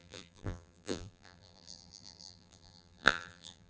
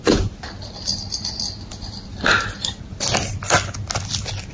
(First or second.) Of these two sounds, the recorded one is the second